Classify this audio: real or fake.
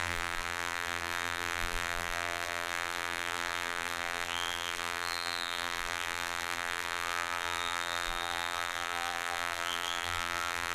fake